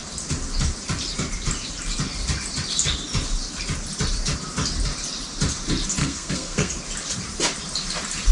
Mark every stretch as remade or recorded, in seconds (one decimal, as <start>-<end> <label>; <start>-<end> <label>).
0.0-6.0 recorded; 6.0-6.7 remade; 6.7-8.3 recorded